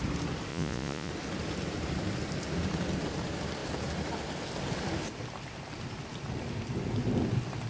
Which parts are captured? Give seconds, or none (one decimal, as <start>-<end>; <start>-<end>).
0.0-0.5; 1.1-7.7